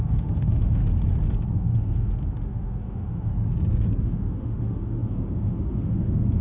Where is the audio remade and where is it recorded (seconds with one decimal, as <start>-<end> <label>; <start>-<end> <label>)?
0.0-0.8 remade; 0.8-1.5 recorded; 1.5-3.3 remade; 3.3-4.0 recorded; 4.0-6.4 remade